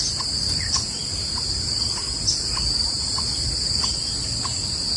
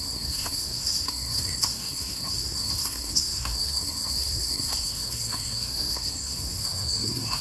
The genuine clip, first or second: first